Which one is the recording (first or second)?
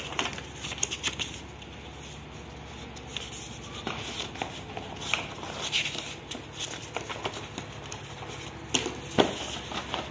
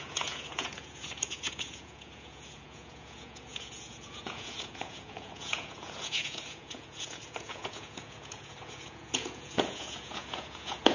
first